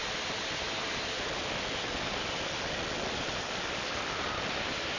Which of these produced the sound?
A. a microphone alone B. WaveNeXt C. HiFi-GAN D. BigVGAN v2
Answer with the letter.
A